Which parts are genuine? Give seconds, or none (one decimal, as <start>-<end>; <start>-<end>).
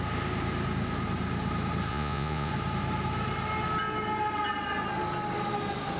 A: 0.0-1.9; 2.5-6.0